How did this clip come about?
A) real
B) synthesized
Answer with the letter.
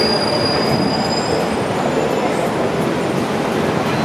A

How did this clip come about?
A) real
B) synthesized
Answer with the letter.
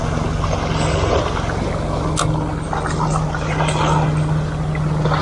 A